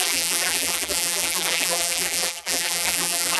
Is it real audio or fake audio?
fake